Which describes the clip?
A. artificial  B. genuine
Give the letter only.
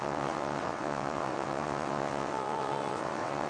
A